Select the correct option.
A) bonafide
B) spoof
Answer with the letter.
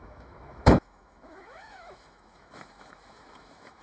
B